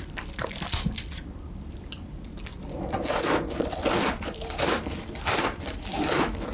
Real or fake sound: fake